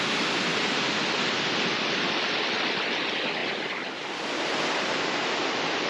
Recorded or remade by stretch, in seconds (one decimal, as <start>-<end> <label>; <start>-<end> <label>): 0.0-5.9 recorded